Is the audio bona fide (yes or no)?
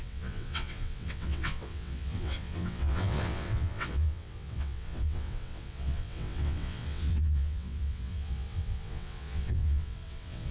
no